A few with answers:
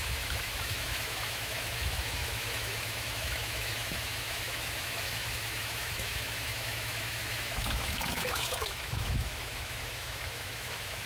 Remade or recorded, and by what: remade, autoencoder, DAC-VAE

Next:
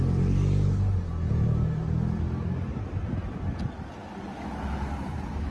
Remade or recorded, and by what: recorded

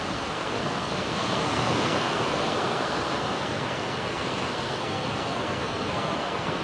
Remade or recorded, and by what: remade, codec, SNAC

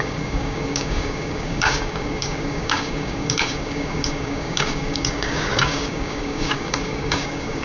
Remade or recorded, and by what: remade, codec, DAC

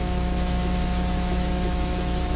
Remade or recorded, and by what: remade, autoencoder, DAC-VAE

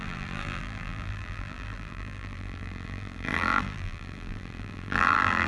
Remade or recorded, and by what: remade, vocoder, BigVGAN v2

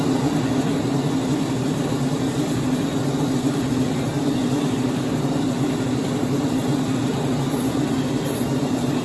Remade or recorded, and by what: recorded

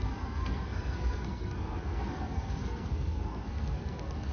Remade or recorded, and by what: remade, codec, SNAC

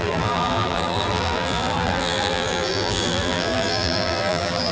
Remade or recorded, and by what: remade, vocoder, BigVGAN v2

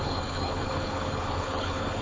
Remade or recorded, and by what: remade, codec, HILCodec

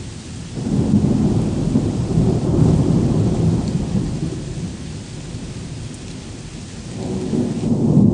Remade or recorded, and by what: recorded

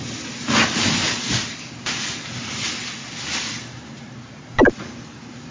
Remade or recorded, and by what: recorded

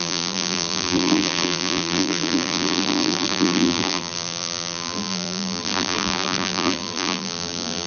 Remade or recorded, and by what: remade, vocoder, BigVGAN v2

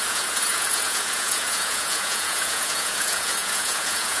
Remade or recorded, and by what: remade, vocoder, Vocos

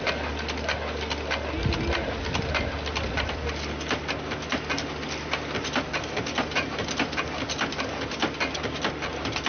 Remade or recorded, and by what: recorded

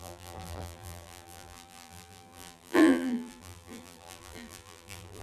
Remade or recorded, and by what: remade, vocoder, BigVGAN v2